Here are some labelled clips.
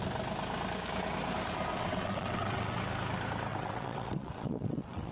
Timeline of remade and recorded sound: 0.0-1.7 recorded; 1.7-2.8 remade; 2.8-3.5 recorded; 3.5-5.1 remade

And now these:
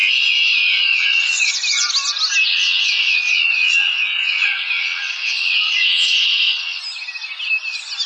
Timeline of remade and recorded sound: 0.0-1.5 remade; 1.5-2.5 recorded; 2.5-6.8 remade; 6.8-8.1 recorded

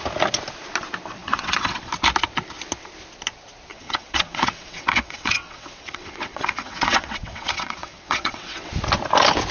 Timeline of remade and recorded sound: 0.0-1.2 recorded; 1.2-1.9 remade; 1.9-3.7 recorded; 3.7-8.7 remade; 8.7-9.5 recorded

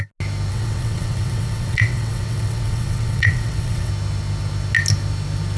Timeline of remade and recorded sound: 0.0-0.5 recorded; 0.5-3.9 remade; 3.9-5.6 recorded